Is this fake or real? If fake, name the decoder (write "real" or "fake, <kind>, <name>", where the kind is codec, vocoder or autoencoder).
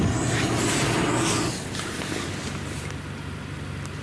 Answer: real